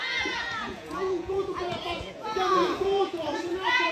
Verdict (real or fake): fake